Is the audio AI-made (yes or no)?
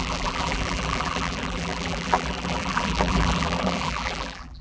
yes